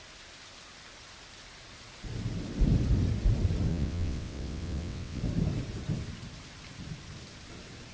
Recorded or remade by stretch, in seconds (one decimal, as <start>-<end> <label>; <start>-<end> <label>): 0.0-3.7 recorded; 3.7-5.2 remade; 5.2-7.9 recorded